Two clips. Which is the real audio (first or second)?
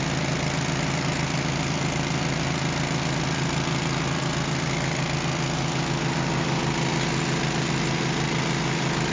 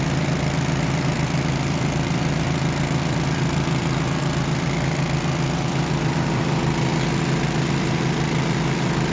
first